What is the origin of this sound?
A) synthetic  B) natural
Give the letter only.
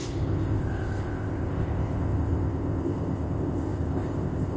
A